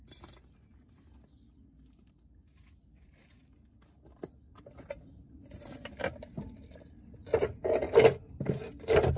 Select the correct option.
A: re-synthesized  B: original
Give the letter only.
B